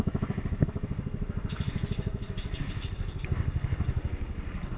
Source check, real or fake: real